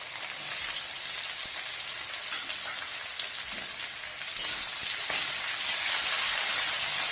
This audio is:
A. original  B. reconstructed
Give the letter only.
A